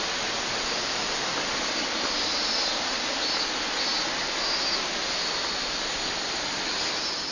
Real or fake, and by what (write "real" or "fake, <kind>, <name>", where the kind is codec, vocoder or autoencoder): real